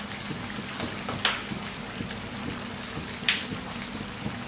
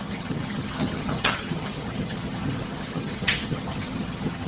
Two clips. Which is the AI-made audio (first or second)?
second